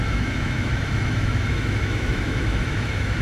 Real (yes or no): no